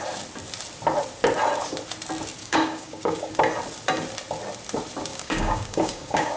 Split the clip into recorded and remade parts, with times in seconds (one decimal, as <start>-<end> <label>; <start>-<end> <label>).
0.0-2.4 recorded; 2.4-3.3 remade; 3.3-5.1 recorded; 5.1-6.4 remade